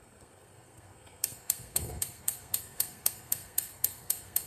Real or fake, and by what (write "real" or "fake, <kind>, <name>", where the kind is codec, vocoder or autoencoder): fake, codec, SNAC